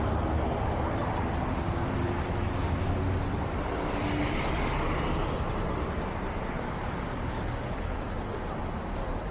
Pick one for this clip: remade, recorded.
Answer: recorded